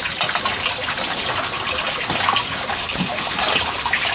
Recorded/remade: recorded